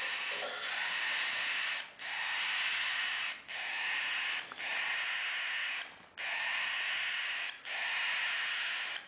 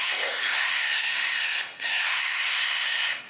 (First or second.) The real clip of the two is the first